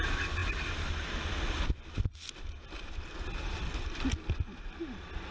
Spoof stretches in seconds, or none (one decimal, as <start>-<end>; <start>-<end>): none